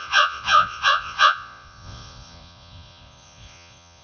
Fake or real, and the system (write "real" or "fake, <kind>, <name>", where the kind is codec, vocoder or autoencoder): fake, vocoder, Vocos